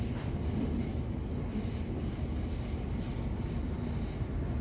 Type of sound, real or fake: real